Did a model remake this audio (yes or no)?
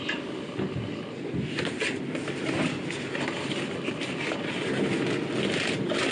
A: no